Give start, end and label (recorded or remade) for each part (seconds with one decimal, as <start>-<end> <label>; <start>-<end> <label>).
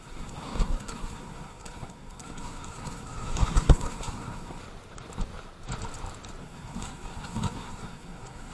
0.0-4.6 remade; 4.6-6.4 recorded; 6.4-8.5 remade